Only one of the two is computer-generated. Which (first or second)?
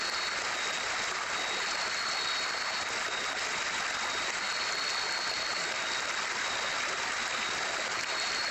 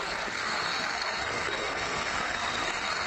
second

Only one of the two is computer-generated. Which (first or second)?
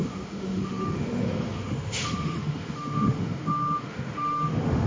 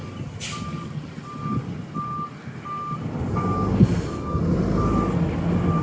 first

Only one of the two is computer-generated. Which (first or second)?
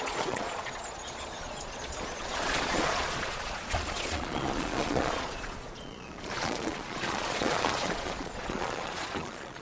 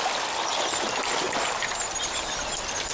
first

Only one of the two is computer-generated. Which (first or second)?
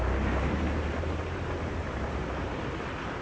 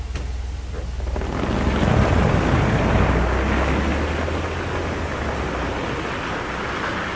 first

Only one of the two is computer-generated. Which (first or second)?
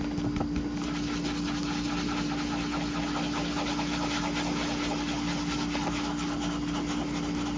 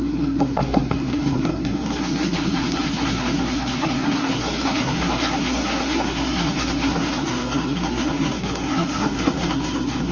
second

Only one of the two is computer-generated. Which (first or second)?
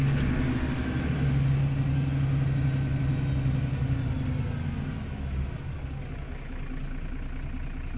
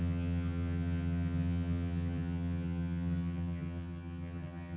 second